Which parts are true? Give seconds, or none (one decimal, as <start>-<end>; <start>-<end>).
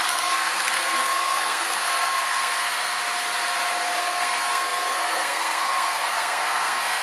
3.0-4.0